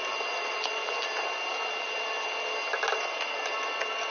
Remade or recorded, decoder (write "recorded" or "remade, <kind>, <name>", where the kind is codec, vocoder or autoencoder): recorded